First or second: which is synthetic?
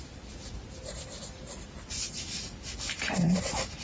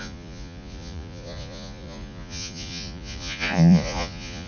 second